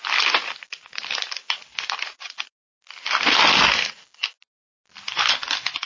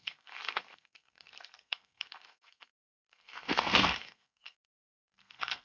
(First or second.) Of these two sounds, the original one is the first